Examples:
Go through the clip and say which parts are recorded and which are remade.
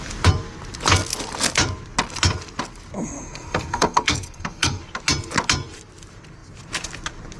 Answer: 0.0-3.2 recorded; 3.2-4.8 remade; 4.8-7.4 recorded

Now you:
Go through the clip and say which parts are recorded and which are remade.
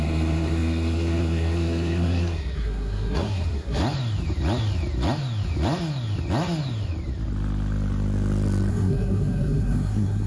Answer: 0.0-3.8 remade; 3.8-8.7 recorded; 8.7-10.3 remade